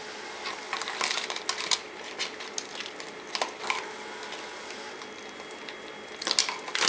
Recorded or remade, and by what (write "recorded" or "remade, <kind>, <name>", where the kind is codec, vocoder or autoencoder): recorded